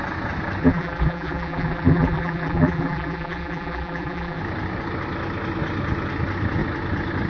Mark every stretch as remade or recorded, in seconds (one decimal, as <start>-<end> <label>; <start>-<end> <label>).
0.0-0.6 recorded; 0.6-4.4 remade; 4.4-7.3 recorded